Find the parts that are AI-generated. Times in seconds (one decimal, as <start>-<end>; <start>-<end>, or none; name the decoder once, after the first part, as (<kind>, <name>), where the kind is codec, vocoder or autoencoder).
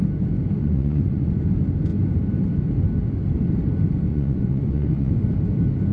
0.6-1.3 (vocoder, Vocos); 4.1-5.1